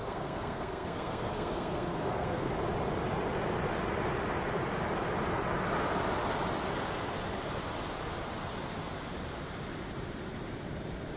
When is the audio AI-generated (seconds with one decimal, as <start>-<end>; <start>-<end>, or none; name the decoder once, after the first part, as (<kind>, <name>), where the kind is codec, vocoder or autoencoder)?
0.0-2.5 (codec, SNAC)